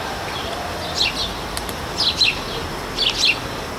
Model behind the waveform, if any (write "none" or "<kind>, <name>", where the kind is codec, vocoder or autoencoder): none